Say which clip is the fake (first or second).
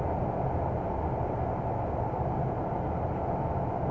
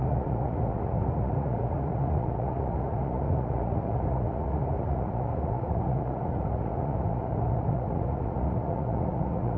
second